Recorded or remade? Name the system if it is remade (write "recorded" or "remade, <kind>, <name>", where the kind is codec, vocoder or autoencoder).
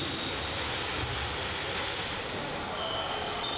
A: recorded